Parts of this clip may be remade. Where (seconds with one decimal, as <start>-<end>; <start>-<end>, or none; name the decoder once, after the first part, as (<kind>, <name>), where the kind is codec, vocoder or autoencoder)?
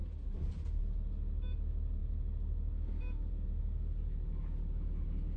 none